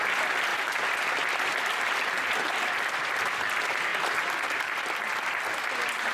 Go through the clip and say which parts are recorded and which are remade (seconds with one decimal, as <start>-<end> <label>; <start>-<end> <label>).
0.0-6.1 recorded